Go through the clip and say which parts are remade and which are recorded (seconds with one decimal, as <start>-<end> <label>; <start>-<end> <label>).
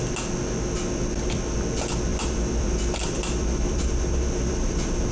0.0-2.1 recorded; 2.1-5.1 remade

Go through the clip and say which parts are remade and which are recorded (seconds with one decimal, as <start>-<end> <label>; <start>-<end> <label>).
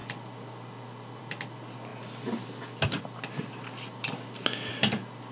0.0-5.3 recorded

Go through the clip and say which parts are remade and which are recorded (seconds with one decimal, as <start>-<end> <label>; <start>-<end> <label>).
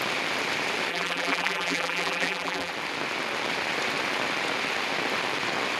0.0-0.9 recorded; 0.9-2.7 remade; 2.7-5.8 recorded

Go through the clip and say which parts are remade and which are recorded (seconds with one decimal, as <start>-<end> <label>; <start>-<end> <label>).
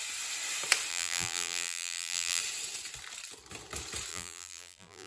0.0-0.9 recorded; 0.9-2.4 remade; 2.4-4.1 recorded; 4.1-5.1 remade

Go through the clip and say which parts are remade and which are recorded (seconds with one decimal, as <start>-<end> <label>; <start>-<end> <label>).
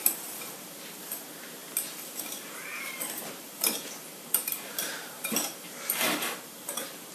0.0-1.6 remade; 1.6-2.2 recorded; 2.2-7.1 remade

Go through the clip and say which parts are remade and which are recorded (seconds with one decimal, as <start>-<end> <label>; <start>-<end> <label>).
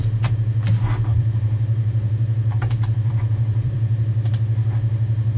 0.0-1.1 recorded; 1.1-4.3 remade; 4.3-5.4 recorded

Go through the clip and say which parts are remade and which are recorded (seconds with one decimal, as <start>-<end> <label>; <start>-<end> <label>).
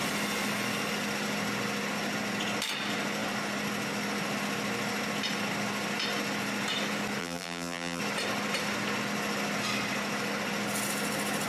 0.0-7.2 recorded; 7.2-8.0 remade; 8.0-11.5 recorded